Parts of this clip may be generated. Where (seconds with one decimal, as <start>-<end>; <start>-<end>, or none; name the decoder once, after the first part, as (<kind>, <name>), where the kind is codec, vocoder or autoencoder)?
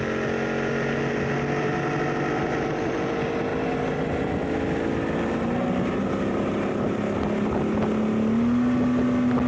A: none